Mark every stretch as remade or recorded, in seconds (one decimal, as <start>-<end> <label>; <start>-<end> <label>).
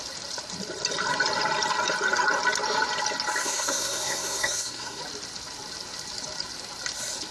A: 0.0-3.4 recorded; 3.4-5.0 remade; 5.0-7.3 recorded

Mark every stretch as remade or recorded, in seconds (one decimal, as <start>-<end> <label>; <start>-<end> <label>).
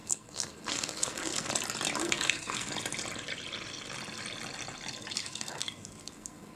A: 0.0-1.5 remade; 1.5-2.0 recorded; 2.0-2.7 remade; 2.7-5.2 recorded; 5.2-6.6 remade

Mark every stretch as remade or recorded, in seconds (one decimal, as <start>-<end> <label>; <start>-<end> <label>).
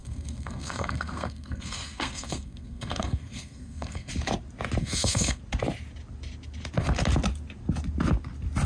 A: 0.0-4.1 remade; 4.1-4.8 recorded; 4.8-5.4 remade; 5.4-8.7 recorded